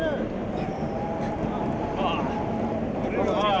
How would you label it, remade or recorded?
recorded